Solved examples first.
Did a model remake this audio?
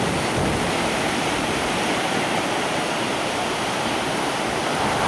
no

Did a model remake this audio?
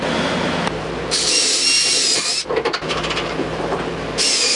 yes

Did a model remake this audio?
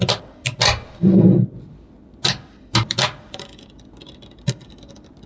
no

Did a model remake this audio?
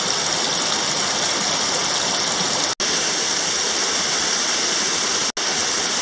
no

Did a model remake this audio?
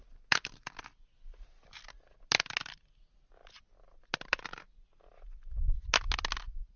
no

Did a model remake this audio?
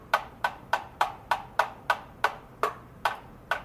no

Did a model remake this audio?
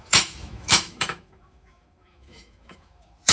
yes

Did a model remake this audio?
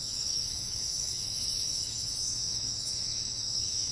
yes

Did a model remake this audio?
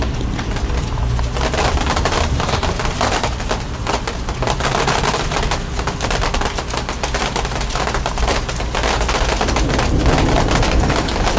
no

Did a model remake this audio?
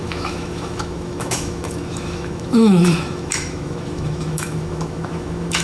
yes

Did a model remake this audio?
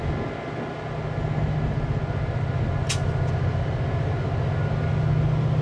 no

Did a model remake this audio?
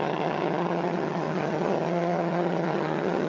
yes